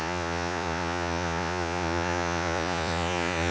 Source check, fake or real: fake